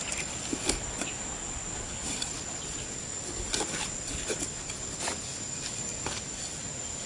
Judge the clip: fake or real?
real